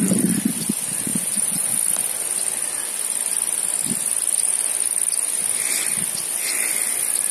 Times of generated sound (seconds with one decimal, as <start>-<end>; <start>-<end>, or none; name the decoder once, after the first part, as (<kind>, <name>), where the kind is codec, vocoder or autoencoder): 1.1-1.7 (vocoder, Vocos)